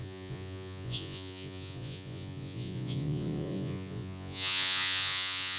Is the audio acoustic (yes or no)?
no